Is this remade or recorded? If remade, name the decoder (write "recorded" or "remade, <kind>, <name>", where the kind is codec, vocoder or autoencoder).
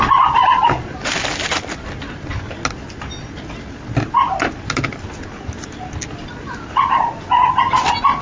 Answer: recorded